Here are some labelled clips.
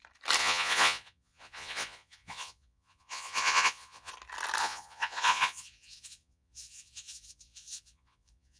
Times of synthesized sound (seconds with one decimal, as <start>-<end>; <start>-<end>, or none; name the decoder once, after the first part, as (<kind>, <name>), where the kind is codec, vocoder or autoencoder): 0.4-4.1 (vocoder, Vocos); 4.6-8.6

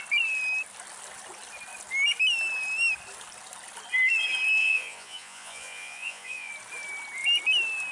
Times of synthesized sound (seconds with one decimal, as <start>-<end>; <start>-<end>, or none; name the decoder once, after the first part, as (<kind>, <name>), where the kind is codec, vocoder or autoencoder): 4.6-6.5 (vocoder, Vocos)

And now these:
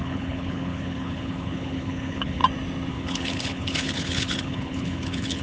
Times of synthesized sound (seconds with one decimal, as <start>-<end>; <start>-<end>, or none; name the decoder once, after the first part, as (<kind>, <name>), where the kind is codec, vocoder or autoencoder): 0.0-2.4 (codec, HILCodec); 2.9-5.4